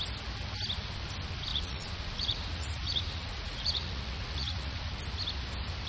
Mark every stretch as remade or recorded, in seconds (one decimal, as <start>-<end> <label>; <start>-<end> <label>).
0.0-1.5 recorded; 1.5-5.0 remade; 5.0-5.9 recorded